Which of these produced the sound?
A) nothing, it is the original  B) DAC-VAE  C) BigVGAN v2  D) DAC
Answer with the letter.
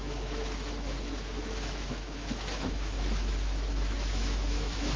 B